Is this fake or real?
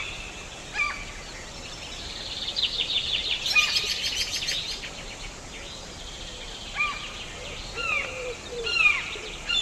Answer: real